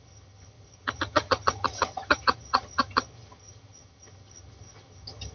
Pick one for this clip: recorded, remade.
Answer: remade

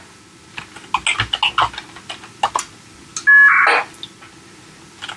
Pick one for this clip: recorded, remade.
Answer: recorded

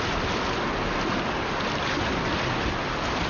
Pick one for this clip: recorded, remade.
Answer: recorded